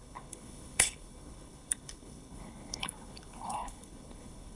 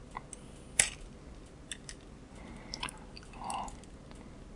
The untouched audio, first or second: second